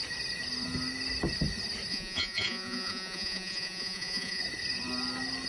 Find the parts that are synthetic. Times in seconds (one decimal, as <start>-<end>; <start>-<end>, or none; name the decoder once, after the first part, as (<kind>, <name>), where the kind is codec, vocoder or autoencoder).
1.9-4.4 (vocoder, Vocos)